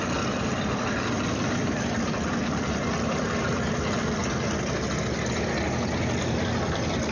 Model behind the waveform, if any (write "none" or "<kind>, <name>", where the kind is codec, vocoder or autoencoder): none